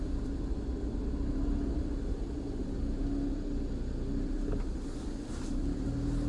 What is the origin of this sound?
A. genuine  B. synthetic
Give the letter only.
A